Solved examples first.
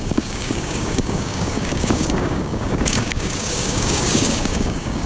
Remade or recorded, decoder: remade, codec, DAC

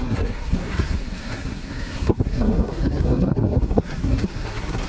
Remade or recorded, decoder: remade, codec, SNAC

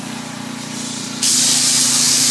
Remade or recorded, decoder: remade, vocoder, BigVGAN v2